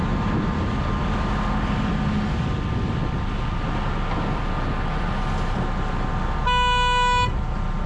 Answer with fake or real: real